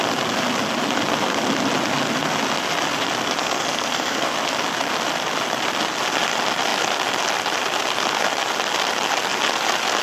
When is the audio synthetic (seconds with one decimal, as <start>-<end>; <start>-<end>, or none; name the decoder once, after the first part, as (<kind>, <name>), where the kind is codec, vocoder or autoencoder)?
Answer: 3.4-4.3 (codec, SNAC)